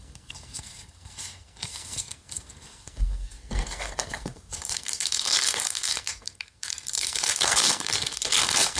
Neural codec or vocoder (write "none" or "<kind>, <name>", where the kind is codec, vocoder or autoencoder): codec, SNAC